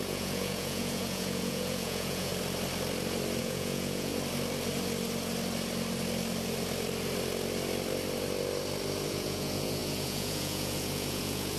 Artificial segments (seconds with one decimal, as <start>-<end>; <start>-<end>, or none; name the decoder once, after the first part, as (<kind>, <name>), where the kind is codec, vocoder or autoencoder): 0.0-2.3 (vocoder, Vocos); 3.4-4.1; 9.1-11.6